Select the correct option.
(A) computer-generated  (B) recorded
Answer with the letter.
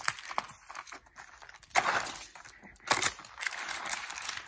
B